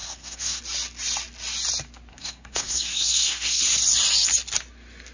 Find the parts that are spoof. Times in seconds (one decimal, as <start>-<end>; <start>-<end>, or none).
0.0-0.6; 2.1-3.6